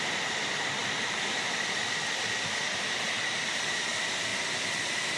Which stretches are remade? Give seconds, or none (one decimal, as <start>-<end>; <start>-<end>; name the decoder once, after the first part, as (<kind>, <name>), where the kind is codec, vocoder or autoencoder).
none